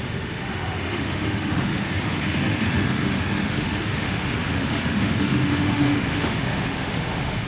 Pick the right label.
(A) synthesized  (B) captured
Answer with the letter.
A